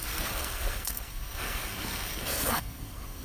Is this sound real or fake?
fake